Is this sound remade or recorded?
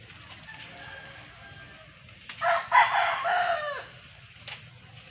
recorded